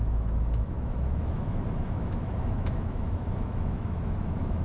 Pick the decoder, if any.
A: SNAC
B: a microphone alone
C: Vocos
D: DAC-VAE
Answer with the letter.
D